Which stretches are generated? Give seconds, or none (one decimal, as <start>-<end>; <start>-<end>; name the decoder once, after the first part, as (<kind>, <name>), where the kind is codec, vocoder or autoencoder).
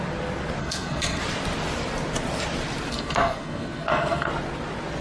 0.6-1.2 (codec, SNAC); 2.9-4.3